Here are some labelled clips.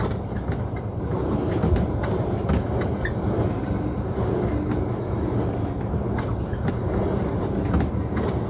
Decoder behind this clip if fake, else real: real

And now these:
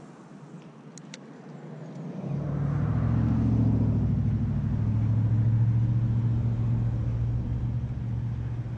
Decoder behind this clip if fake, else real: real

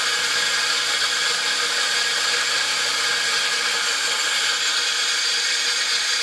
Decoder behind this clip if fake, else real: real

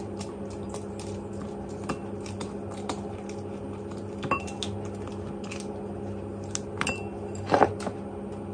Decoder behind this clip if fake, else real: real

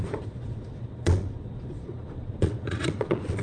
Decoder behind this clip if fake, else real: fake, vocoder, Vocos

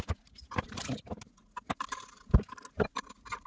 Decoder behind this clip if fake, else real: real